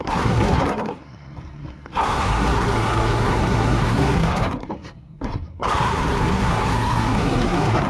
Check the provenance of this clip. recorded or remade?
remade